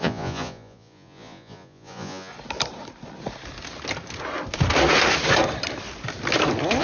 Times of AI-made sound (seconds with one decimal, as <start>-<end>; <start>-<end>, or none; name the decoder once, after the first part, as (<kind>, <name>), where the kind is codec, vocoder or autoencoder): 0.0-2.3 (vocoder, Vocos)